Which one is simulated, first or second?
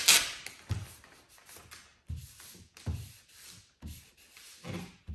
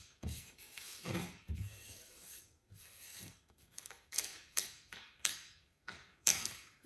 second